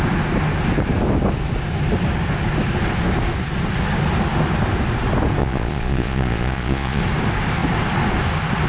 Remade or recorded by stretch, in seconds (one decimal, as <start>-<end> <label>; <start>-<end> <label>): 0.0-5.4 recorded; 5.4-7.0 remade; 7.0-8.7 recorded